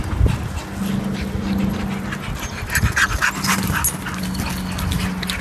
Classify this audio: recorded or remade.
recorded